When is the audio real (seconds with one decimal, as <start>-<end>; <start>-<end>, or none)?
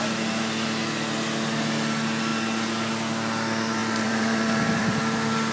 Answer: 0.0-3.8; 5.0-5.5